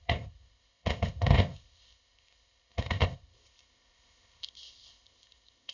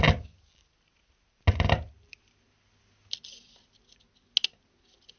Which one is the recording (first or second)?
second